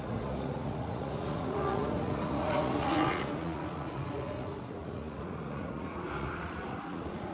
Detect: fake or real fake